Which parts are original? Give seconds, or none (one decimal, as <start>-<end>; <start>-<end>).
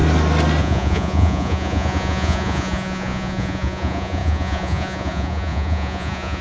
0.0-0.6